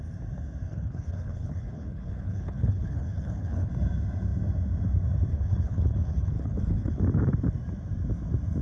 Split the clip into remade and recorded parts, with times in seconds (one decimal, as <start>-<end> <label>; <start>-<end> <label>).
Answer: 0.0-0.7 recorded; 0.7-3.7 remade; 3.7-5.3 recorded; 5.3-7.0 remade; 7.0-8.6 recorded